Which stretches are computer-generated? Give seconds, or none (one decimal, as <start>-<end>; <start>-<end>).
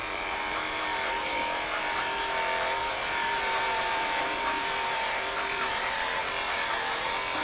0.0-2.2; 2.8-5.8